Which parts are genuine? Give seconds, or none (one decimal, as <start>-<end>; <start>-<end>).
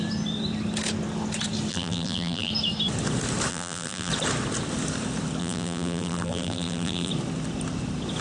0.0-1.7; 2.5-3.5; 4.1-5.4; 7.1-8.2